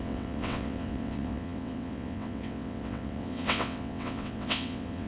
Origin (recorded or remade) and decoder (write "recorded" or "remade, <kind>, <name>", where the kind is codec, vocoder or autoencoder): remade, vocoder, WaveNeXt